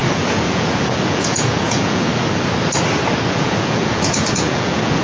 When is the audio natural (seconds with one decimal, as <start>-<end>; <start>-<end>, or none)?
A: 2.1-3.3